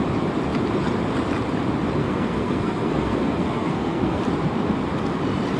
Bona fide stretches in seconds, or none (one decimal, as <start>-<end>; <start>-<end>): 0.0-2.0; 4.2-5.6